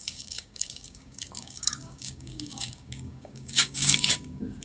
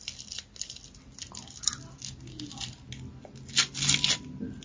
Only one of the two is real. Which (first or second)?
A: second